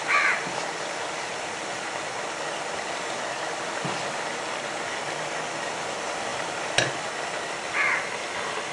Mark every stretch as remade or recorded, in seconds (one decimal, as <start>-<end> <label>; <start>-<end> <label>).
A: 0.0-8.7 recorded